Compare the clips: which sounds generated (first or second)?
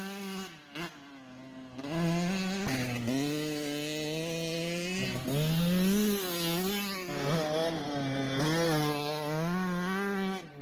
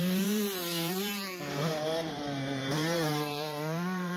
second